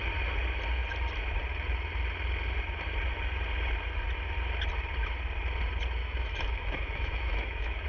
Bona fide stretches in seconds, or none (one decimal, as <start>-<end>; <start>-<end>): 0.0-6.0